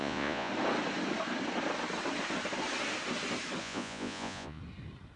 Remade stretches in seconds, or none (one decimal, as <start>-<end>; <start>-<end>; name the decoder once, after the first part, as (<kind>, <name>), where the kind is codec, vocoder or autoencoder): 0.0-0.5 (vocoder, Vocos); 3.6-4.6